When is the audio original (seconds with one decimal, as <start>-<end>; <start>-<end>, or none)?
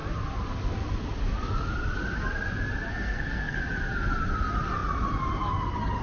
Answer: 0.0-2.9; 3.6-6.0